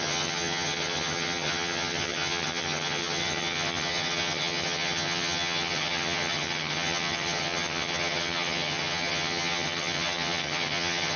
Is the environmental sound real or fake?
fake